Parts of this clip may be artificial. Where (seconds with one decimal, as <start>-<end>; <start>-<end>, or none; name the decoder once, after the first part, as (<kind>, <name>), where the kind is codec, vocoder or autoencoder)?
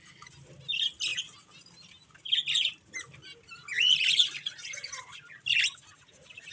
none